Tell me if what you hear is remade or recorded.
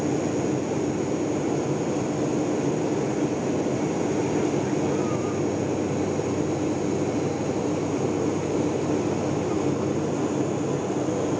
recorded